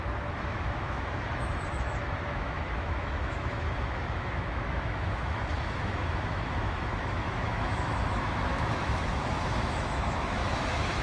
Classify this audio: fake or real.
fake